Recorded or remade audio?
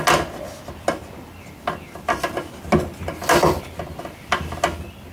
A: recorded